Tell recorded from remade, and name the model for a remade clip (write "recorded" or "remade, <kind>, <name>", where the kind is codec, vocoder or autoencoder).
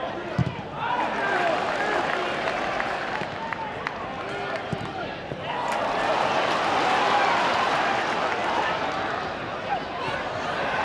recorded